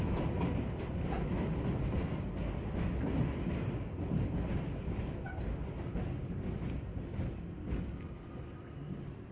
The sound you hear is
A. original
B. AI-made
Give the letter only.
A